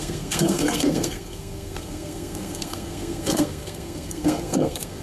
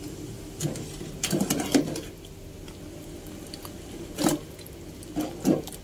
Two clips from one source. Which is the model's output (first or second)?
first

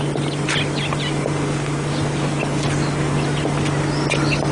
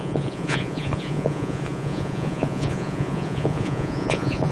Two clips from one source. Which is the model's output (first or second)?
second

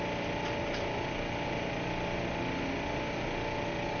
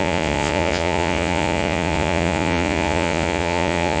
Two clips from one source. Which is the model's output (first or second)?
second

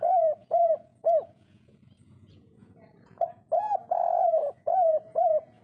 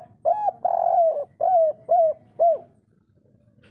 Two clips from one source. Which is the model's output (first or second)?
first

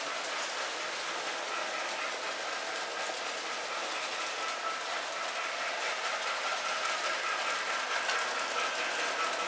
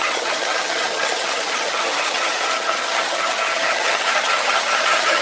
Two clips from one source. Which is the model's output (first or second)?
second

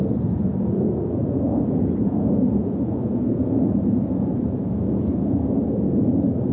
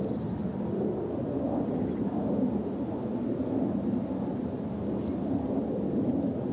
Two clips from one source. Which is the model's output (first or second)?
first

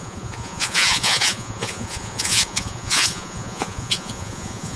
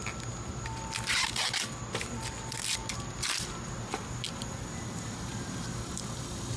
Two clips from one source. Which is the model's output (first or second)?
first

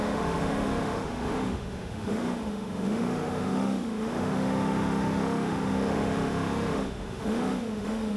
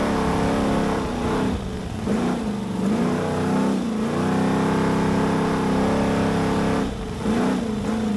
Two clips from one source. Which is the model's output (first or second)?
first